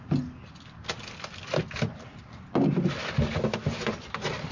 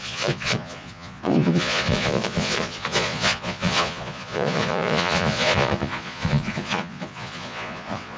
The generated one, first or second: second